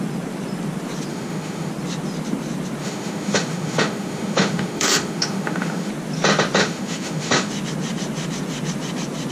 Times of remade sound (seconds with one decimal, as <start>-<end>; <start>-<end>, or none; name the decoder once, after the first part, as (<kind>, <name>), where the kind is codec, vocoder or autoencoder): 1.1-1.7 (autoencoder, DAC-VAE); 2.8-5.9; 6.6-7.5